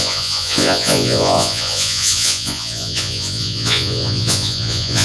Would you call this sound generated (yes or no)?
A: yes